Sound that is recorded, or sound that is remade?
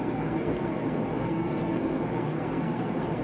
remade